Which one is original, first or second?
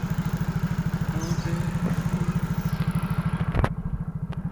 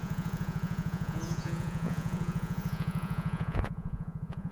first